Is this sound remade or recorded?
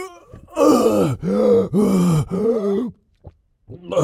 remade